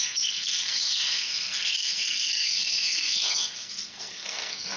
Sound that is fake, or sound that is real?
fake